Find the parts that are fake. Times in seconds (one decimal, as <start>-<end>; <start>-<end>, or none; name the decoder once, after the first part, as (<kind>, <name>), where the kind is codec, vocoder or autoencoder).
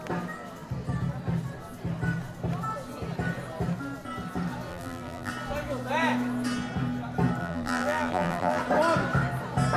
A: 4.7-5.3 (vocoder, BigVGAN v2); 7.4-8.6